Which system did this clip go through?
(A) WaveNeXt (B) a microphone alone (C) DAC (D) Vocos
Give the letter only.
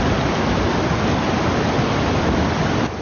B